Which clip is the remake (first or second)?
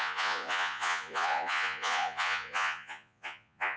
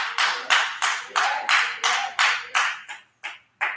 first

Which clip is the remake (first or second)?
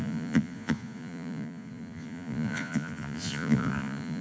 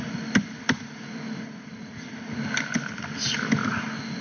first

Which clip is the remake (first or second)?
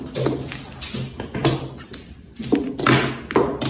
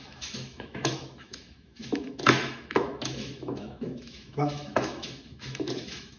second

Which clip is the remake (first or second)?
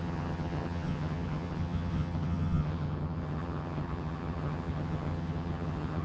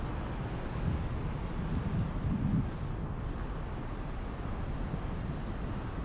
first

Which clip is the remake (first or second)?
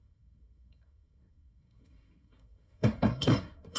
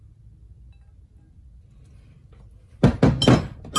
first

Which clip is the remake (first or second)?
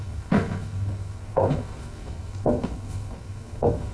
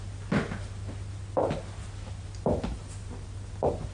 first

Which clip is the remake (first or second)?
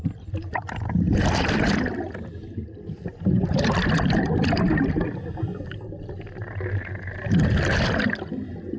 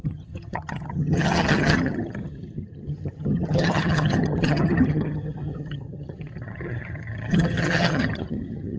second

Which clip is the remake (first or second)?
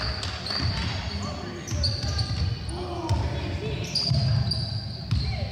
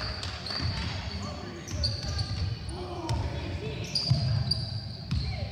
second